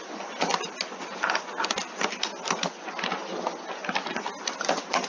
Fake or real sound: real